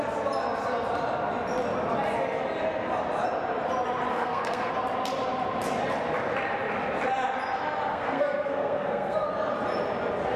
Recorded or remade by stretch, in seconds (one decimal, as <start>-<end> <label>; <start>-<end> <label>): 0.0-4.1 recorded; 4.1-4.7 remade; 4.7-7.9 recorded; 7.9-9.3 remade; 9.3-10.4 recorded